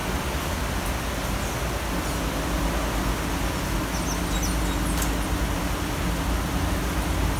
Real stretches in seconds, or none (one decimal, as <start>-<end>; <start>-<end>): 0.0-7.4